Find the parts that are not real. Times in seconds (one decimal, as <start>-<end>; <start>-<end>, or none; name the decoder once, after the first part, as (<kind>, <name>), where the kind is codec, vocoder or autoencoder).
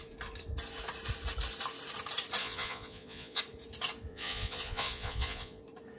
2.4-3.4 (vocoder, Vocos); 4.1-5.6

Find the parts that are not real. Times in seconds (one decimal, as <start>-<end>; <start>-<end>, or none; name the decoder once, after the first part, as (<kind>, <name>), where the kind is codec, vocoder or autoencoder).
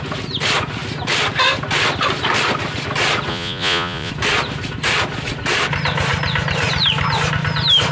3.3-4.1 (vocoder, Vocos)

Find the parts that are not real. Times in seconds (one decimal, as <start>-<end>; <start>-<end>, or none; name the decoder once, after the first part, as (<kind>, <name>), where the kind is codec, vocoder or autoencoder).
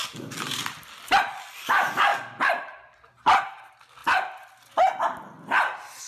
0.0-0.6 (vocoder, BigVGAN v2); 2.1-3.1; 4.0-5.0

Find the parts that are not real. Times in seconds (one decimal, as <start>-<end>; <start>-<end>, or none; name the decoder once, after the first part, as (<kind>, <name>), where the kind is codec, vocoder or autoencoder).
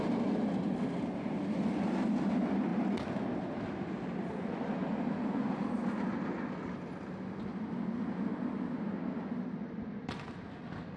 none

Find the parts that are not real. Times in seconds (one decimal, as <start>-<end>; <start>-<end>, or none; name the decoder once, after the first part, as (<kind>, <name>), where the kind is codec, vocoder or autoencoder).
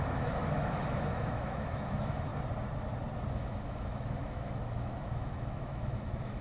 0.0-2.3 (autoencoder, DAC-VAE); 3.3-6.4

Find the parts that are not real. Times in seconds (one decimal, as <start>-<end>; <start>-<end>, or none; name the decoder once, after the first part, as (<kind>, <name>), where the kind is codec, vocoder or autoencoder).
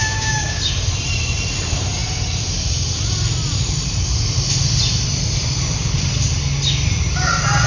0.0-0.6 (codec, DAC)